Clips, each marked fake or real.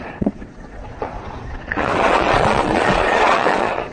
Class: fake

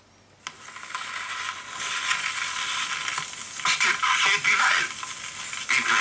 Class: real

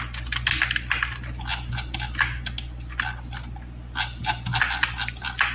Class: real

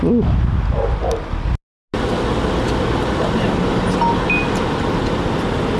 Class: real